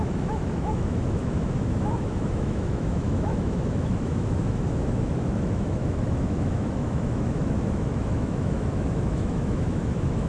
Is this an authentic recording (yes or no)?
no